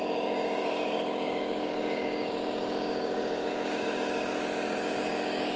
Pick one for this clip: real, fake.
fake